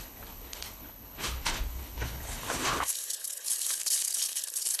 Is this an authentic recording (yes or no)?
no